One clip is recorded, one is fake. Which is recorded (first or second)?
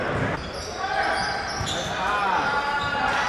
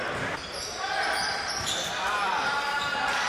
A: first